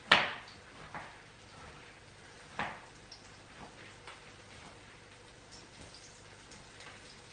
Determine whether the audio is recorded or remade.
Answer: recorded